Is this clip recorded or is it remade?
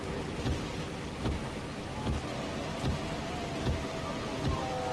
recorded